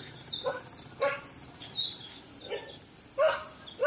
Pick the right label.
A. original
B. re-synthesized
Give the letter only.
A